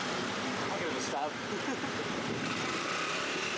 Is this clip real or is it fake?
fake